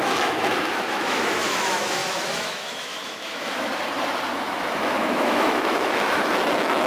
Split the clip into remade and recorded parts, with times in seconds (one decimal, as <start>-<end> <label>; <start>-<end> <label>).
0.0-3.7 remade; 3.7-4.3 recorded; 4.3-6.9 remade